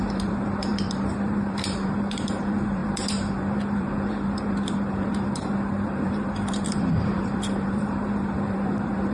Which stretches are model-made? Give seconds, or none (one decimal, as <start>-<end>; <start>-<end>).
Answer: 0.0-9.1